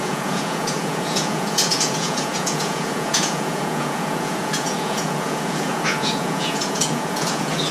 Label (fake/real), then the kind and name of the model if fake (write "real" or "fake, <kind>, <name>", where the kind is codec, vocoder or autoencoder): fake, vocoder, Vocos